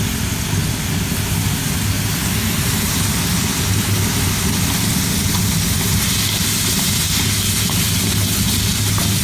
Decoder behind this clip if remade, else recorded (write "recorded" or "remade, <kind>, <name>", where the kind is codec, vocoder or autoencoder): recorded